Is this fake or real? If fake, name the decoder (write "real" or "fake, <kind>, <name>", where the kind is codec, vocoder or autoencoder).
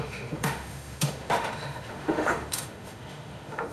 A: fake, autoencoder, DAC-VAE